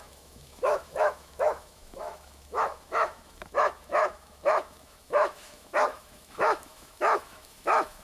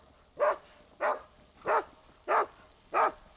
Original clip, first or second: second